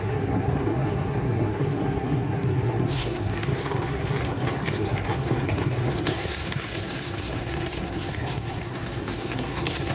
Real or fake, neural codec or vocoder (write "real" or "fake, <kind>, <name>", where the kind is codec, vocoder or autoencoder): fake, codec, SNAC